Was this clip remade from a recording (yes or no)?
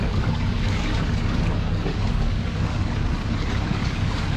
yes